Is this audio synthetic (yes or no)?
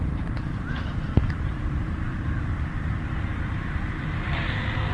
yes